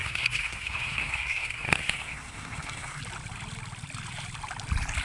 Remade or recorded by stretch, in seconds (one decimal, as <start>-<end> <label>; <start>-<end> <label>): 0.0-3.0 remade; 3.0-5.0 recorded